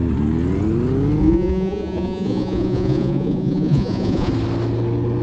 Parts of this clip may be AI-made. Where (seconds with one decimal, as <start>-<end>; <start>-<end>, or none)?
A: 1.2-4.3